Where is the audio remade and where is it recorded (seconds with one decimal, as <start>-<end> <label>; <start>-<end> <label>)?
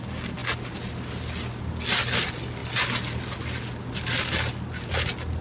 0.0-5.4 recorded